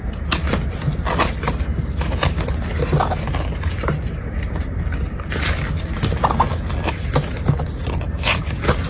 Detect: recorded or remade recorded